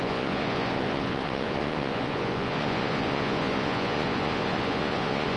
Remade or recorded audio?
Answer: remade